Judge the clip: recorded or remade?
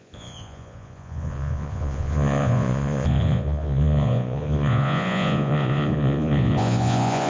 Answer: remade